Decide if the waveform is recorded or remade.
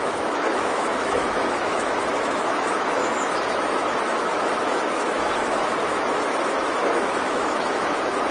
remade